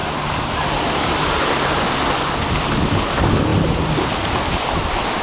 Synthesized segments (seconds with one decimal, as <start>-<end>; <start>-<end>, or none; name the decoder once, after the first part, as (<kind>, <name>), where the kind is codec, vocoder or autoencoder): none